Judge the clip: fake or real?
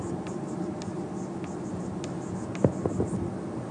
real